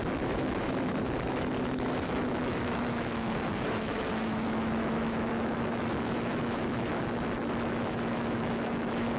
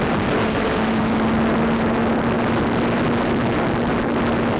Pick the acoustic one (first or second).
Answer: second